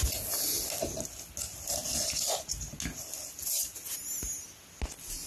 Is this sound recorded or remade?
recorded